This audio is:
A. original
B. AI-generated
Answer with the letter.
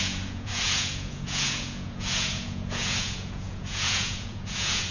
B